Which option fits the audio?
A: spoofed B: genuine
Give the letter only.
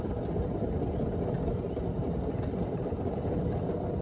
B